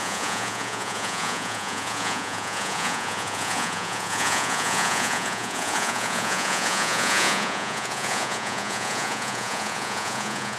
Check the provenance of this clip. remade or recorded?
remade